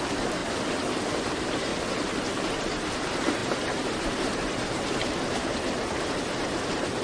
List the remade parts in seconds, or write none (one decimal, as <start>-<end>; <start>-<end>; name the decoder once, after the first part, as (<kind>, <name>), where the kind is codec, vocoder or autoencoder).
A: 0.0-0.4 (vocoder, BigVGAN v2); 1.0-1.7; 2.6-7.0